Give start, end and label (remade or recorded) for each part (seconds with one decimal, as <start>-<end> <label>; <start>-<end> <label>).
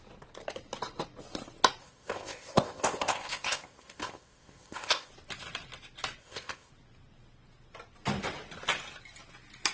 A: 0.0-1.8 recorded; 1.8-5.1 remade; 5.1-6.2 recorded; 6.2-6.7 remade; 6.7-9.7 recorded